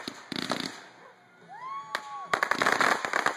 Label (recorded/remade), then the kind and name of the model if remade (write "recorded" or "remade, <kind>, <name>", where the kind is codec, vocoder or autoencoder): recorded